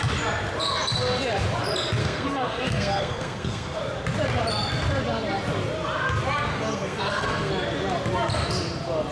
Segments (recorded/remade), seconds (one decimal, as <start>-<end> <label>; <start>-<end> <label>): 0.0-2.0 recorded; 2.0-3.8 remade; 3.8-6.5 recorded; 6.5-7.5 remade; 7.5-9.1 recorded